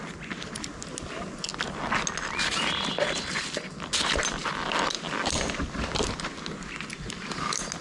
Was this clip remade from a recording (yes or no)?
no